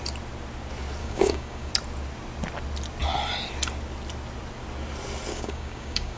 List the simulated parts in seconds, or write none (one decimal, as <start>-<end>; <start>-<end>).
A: 1.0-1.7; 5.3-6.2